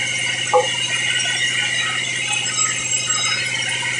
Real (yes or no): yes